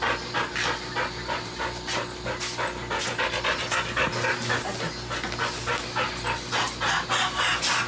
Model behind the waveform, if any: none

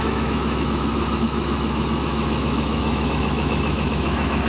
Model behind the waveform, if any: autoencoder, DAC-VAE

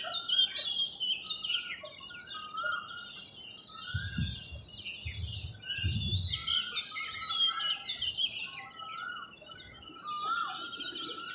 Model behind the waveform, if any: none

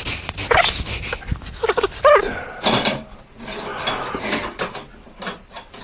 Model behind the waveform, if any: none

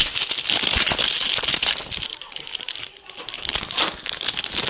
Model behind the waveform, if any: none